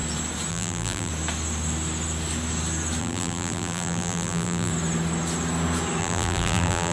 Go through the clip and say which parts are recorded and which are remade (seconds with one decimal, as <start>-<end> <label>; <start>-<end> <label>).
0.0-0.5 recorded; 0.5-1.1 remade; 1.1-3.0 recorded; 3.0-4.7 remade; 4.7-6.0 recorded; 6.0-6.9 remade